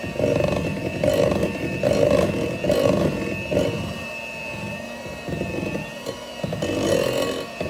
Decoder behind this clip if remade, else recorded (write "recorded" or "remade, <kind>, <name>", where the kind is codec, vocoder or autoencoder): recorded